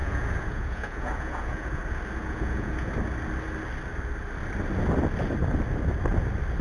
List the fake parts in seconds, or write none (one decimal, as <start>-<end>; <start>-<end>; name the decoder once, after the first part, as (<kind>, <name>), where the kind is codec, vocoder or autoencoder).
0.0-1.8 (vocoder, Vocos); 2.2-2.9